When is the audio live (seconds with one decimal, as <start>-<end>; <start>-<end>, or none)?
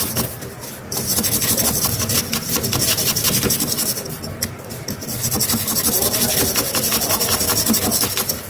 0.0-8.5